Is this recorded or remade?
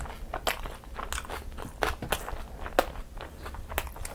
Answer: recorded